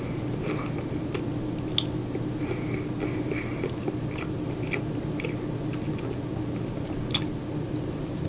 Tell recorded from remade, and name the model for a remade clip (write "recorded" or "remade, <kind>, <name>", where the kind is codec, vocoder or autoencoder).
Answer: recorded